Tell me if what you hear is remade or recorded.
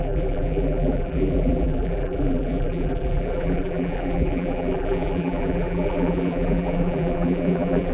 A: remade